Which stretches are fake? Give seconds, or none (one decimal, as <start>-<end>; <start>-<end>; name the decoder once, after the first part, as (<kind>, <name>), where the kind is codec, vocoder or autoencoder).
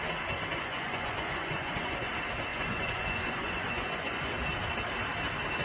0.5-2.1 (vocoder, Vocos); 2.5-4.3